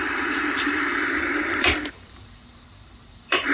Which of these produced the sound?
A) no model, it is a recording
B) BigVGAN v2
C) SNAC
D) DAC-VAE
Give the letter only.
B